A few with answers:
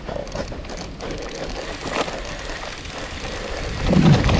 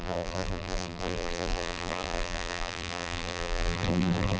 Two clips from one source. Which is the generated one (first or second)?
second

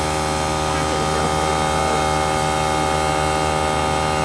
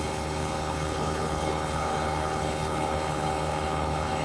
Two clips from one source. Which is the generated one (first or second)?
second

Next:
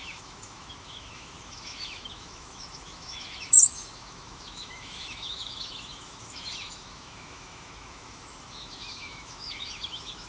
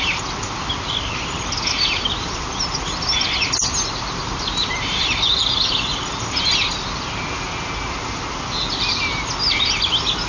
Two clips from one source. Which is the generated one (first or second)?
first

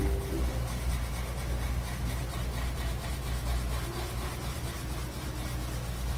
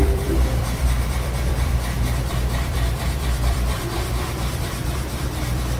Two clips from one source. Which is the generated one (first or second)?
second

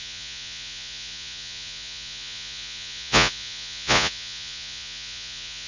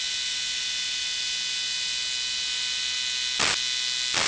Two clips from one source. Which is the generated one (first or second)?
first